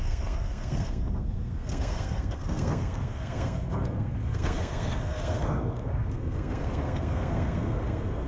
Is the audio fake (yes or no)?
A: yes